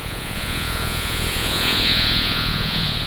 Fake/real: fake